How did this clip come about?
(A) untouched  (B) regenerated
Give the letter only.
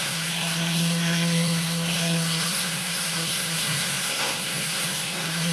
B